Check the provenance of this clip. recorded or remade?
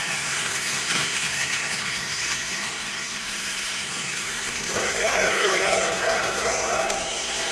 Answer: remade